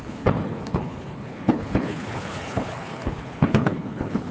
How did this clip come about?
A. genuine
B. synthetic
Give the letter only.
B